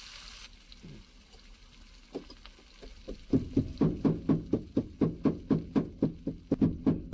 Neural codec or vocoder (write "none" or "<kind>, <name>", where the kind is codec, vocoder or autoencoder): none